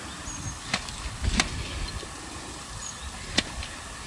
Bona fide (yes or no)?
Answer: yes